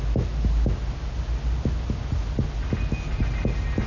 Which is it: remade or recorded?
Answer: recorded